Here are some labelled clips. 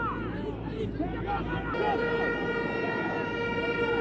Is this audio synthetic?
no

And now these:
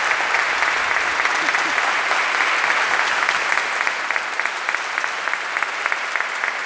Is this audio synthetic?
no